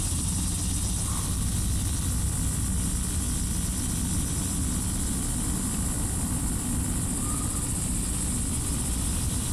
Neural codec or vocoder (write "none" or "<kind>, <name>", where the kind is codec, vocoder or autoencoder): none